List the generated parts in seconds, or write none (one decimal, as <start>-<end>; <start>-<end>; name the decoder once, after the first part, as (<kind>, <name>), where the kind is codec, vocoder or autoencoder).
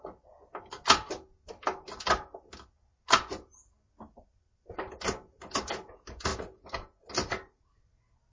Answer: none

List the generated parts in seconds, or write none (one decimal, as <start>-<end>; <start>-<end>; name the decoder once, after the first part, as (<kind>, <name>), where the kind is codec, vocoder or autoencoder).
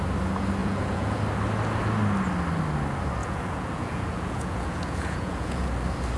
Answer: 0.6-1.2 (vocoder, Vocos); 3.2-5.7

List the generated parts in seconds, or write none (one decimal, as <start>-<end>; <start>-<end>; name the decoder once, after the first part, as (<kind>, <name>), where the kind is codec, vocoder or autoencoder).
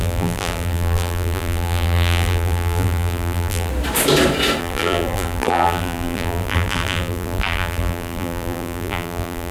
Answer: 0.0-3.7 (vocoder, BigVGAN v2); 4.6-9.5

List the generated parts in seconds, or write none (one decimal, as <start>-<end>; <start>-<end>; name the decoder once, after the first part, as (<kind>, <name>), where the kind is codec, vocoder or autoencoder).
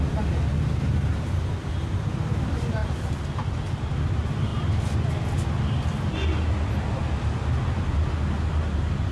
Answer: none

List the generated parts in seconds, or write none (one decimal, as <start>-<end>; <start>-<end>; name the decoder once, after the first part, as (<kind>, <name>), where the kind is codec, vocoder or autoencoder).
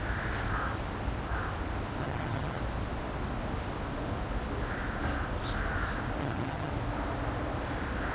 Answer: 2.0-2.6 (vocoder, HiFi-GAN); 6.2-6.7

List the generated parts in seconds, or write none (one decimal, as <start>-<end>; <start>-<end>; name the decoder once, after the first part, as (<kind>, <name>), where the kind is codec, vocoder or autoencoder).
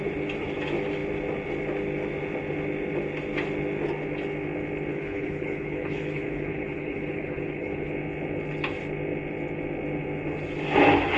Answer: 4.9-7.9 (codec, HILCodec)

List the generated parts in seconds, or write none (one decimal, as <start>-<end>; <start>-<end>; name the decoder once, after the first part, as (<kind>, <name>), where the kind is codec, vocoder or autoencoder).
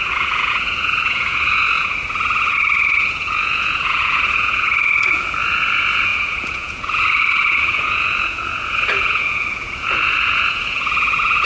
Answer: 0.0-11.5 (vocoder, Vocos)